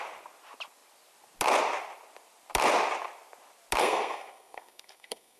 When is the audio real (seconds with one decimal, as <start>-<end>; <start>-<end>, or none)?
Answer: 0.0-3.8